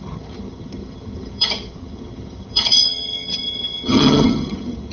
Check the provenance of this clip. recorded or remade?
remade